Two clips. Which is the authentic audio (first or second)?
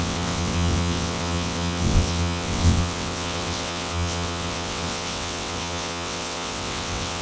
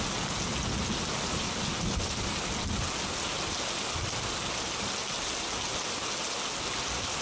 second